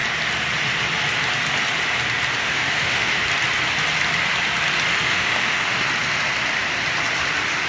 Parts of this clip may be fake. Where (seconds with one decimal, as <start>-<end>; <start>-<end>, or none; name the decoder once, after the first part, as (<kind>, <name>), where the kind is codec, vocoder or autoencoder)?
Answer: 2.4-3.2 (autoencoder, DAC-VAE); 4.9-5.8